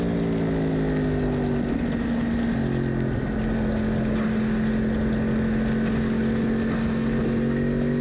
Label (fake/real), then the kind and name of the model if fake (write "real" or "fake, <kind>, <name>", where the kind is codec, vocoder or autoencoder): real